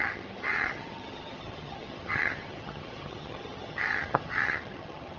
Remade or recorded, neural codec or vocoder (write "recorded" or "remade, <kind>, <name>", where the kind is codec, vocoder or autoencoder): remade, vocoder, HiFi-GAN